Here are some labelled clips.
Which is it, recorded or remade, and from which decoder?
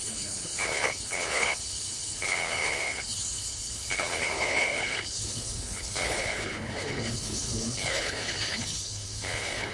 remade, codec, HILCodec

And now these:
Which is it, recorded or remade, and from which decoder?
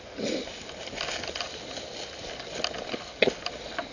recorded